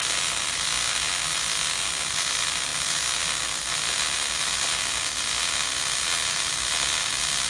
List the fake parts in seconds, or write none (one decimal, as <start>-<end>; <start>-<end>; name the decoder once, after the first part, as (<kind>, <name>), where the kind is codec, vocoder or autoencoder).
none